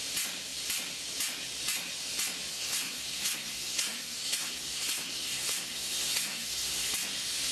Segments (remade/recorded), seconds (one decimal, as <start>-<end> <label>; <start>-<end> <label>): 0.0-2.5 recorded; 2.5-6.9 remade; 6.9-7.5 recorded